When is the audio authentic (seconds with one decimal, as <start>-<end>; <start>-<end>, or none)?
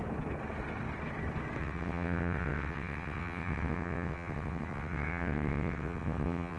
0.0-1.6